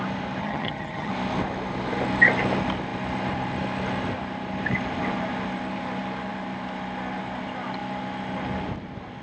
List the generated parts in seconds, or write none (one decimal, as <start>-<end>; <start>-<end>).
0.4-1.1